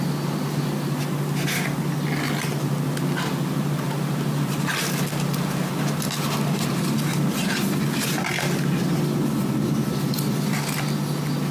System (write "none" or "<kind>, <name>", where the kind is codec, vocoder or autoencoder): none